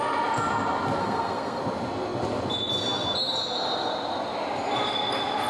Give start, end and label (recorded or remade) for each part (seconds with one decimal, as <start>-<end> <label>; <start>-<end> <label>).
0.0-1.0 recorded; 1.0-1.6 remade; 1.6-5.5 recorded